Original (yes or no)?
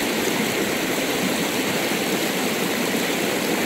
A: no